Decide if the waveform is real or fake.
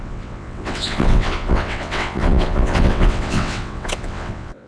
fake